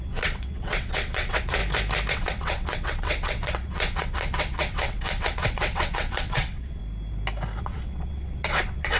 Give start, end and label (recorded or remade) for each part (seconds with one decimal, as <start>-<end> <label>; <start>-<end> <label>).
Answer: 0.0-1.6 remade; 1.6-2.1 recorded; 2.1-6.8 remade; 6.8-7.6 recorded; 7.6-9.0 remade